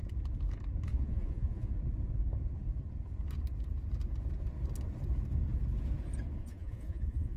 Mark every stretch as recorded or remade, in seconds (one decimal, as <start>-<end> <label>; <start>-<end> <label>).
0.0-0.9 recorded; 0.9-1.7 remade; 1.7-6.4 recorded; 6.4-7.4 remade